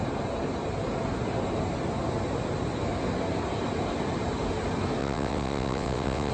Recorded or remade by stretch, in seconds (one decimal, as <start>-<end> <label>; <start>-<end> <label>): 0.0-5.0 recorded; 5.0-6.3 remade

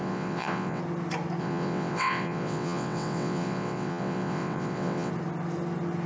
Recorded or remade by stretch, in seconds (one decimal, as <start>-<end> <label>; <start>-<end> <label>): 0.0-0.8 remade; 0.8-1.4 recorded; 1.4-5.1 remade; 5.1-6.1 recorded

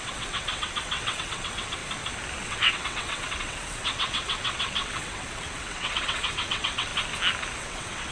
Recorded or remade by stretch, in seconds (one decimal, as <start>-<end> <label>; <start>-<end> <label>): 0.0-1.8 remade; 1.8-2.4 recorded; 2.4-6.9 remade; 6.9-7.6 recorded; 7.6-8.1 remade

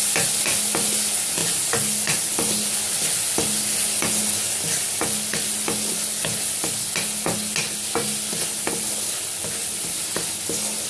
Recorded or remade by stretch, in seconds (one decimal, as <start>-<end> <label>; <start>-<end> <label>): 0.0-10.9 recorded

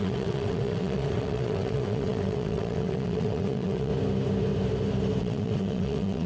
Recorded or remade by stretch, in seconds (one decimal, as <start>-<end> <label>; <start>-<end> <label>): 0.0-3.9 remade; 3.9-5.2 recorded; 5.2-6.3 remade